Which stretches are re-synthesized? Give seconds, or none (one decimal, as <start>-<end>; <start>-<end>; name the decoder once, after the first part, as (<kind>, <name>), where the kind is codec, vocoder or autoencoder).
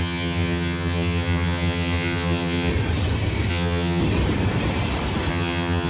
0.0-2.7 (vocoder, HiFi-GAN); 3.5-4.0; 5.3-5.9